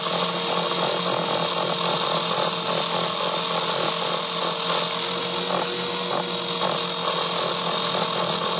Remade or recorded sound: recorded